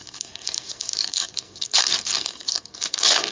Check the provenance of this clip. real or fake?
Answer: fake